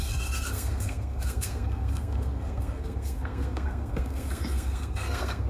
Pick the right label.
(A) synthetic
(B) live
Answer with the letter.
A